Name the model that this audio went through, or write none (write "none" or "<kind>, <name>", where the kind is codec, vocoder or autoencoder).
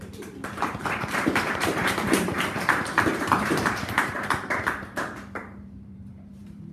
vocoder, BigVGAN v2